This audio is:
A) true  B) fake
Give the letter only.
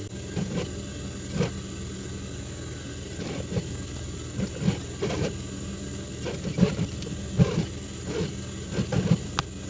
A